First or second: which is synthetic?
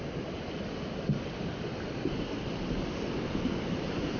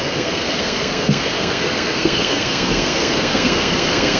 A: second